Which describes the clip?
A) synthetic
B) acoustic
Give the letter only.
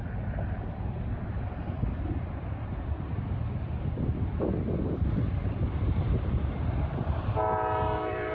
A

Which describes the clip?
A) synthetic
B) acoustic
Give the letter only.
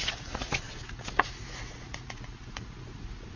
A